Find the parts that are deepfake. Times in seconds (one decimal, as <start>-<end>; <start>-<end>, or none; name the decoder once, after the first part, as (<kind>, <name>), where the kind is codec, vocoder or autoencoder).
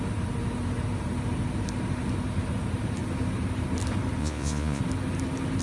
4.2-4.8 (vocoder, Vocos)